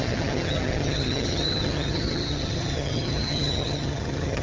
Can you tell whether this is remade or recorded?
remade